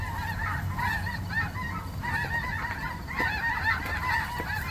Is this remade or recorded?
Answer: recorded